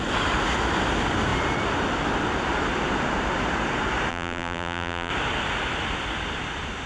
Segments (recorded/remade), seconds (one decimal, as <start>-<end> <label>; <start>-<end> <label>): 0.0-4.1 recorded; 4.1-5.1 remade; 5.1-6.9 recorded